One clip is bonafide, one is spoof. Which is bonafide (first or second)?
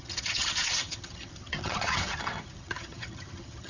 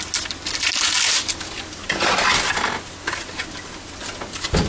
second